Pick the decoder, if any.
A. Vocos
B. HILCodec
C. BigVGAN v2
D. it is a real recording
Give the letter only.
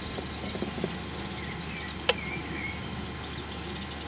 D